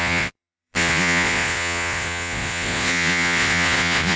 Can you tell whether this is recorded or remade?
remade